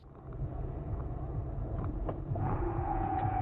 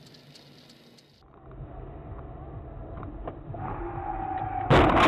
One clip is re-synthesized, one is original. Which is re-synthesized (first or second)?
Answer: first